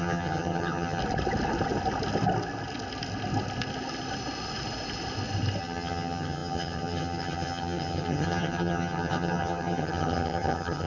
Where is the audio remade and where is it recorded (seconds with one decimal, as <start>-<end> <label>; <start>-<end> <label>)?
0.0-1.0 remade; 1.0-5.6 recorded; 5.6-10.9 remade